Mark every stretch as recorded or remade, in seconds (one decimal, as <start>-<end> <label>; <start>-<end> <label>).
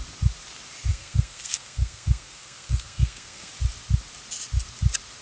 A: 0.0-0.9 recorded; 0.9-3.5 remade; 3.5-5.2 recorded